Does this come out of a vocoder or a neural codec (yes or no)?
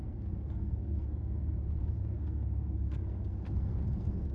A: yes